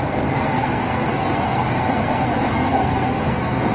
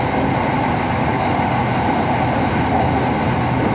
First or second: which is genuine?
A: second